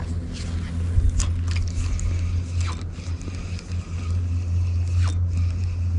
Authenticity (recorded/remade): recorded